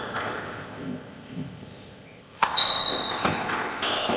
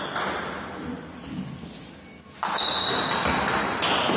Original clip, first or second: second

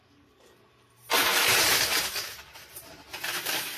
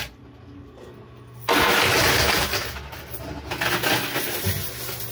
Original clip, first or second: second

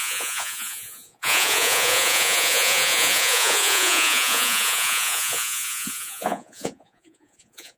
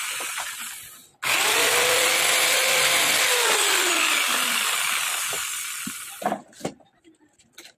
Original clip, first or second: second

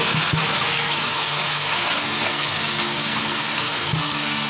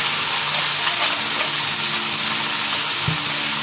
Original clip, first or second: second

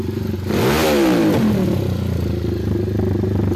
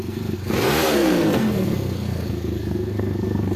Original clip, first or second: first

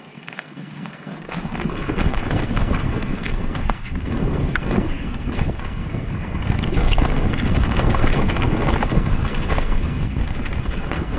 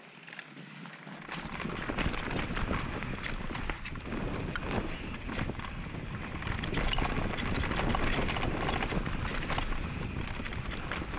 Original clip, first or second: second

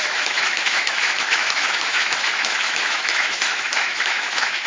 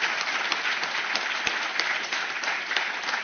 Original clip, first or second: second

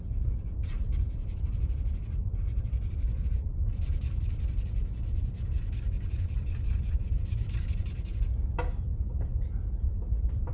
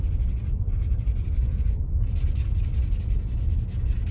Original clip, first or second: second